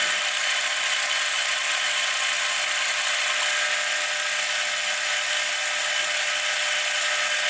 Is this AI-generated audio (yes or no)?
no